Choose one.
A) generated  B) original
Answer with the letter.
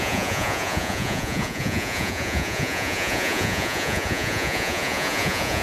A